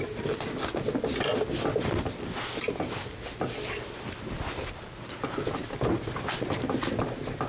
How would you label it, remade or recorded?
recorded